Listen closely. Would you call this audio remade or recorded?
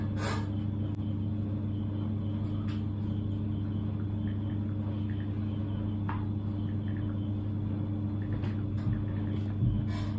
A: recorded